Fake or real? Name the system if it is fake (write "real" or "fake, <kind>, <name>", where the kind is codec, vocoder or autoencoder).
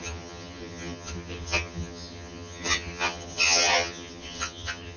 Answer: fake, vocoder, HiFi-GAN